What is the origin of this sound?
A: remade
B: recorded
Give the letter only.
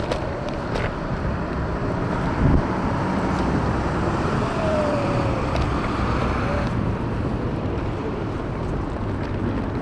A